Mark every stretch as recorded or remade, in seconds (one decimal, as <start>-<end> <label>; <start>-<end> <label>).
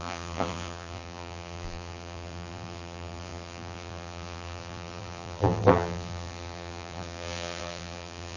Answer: 0.0-8.4 remade